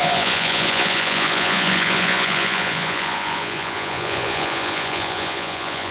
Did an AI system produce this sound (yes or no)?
yes